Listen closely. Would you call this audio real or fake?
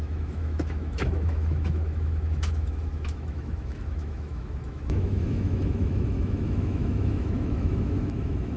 fake